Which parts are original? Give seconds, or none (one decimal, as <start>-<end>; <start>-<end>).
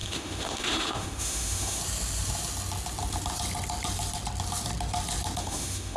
1.8-5.4